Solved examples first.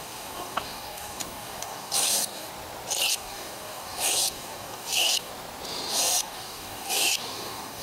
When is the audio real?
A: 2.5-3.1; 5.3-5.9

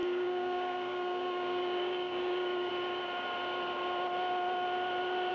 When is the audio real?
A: 2.7-5.3

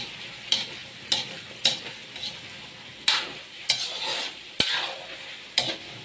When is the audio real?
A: 0.0-6.0

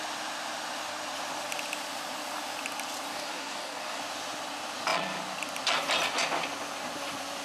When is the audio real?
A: 0.0-3.1; 4.0-7.4